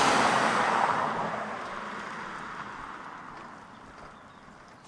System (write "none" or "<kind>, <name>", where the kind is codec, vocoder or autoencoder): none